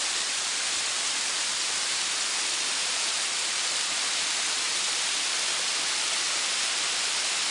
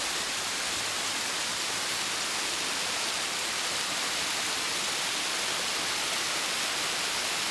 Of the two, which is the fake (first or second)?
first